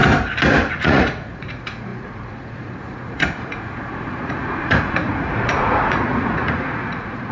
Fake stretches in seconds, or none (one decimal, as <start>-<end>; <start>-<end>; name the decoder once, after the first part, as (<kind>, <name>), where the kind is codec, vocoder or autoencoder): 0.7-7.3 (vocoder, Vocos)